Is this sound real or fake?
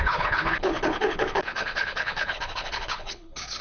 fake